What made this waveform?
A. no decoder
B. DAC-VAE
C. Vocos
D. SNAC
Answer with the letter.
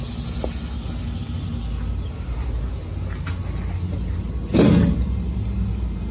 A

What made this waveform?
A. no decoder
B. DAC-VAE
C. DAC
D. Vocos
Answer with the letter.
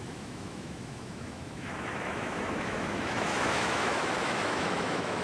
B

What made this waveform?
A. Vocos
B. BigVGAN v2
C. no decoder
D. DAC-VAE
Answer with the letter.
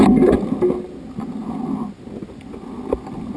C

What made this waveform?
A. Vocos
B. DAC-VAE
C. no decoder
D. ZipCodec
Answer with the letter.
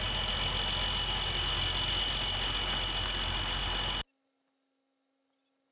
C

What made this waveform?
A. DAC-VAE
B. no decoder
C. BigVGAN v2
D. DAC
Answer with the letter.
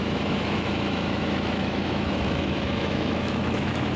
A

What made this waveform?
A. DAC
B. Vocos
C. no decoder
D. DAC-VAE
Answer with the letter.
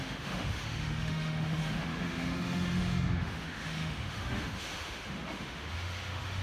D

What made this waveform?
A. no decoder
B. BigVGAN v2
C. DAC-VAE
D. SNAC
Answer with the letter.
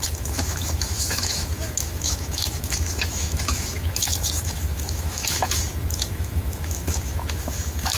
C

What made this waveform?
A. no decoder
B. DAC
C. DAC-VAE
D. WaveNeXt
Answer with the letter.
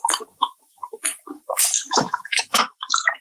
C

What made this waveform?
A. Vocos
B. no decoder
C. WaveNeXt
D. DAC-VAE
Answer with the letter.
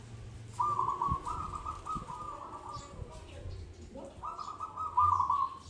B